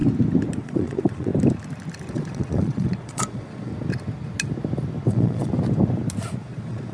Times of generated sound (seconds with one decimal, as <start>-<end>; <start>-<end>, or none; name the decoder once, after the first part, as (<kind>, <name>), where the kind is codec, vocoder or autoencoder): 0.6-1.3 (vocoder, Vocos); 2.1-3.7; 5.1-5.5; 6.4-6.9